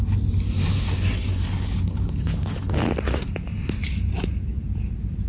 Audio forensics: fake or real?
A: real